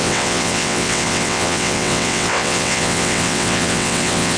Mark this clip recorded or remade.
remade